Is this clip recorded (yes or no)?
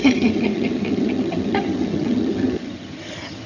no